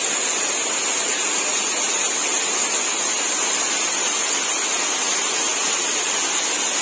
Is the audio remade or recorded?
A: recorded